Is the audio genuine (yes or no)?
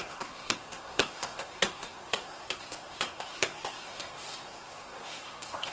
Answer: no